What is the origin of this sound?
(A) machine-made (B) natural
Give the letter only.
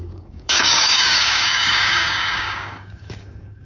A